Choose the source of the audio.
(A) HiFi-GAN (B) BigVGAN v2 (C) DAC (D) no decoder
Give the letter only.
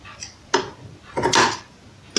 D